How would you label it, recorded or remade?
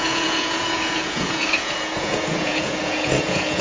remade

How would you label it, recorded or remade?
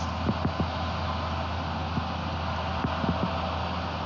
recorded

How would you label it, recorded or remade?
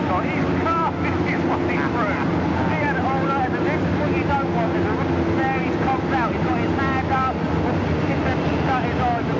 recorded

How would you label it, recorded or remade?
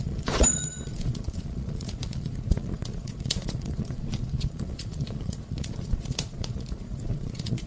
remade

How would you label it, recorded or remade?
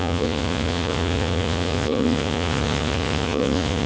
remade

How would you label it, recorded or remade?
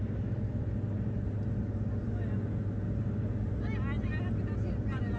recorded